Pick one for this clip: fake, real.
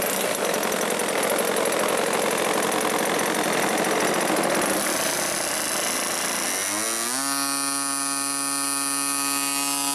real